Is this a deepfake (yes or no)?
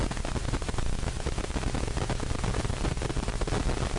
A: no